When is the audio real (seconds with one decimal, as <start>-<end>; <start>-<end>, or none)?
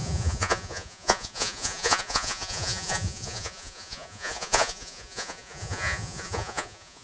none